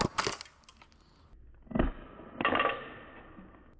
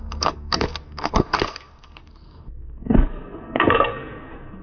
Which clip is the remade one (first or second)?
second